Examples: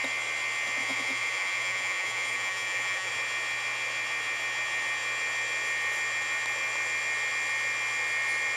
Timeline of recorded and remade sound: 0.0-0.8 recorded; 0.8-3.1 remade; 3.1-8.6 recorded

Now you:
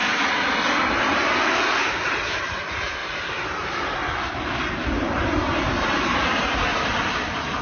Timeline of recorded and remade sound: 0.0-0.7 recorded; 0.7-3.0 remade; 3.0-4.7 recorded; 4.7-6.7 remade; 6.7-7.6 recorded

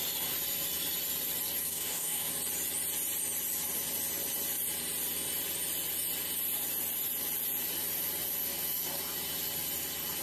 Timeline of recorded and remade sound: 0.0-1.7 recorded; 1.7-2.3 remade; 2.3-10.2 recorded

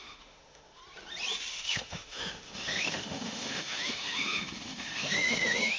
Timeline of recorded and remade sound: 0.0-0.8 remade; 0.8-1.5 recorded; 1.5-5.8 remade

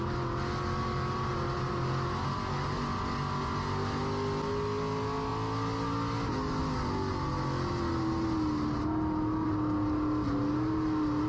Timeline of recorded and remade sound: 0.0-11.3 recorded